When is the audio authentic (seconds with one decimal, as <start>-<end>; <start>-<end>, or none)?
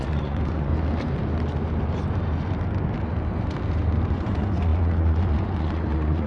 0.7-4.1